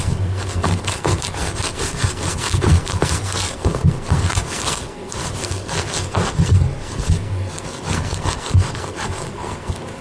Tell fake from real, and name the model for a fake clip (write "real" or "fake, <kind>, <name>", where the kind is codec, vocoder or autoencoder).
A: fake, codec, SNAC